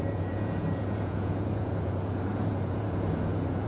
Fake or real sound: fake